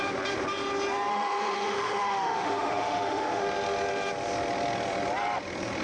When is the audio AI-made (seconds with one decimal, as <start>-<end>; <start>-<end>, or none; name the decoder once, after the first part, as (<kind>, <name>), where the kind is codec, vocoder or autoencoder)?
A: 1.1-3.4 (autoencoder, DAC-VAE)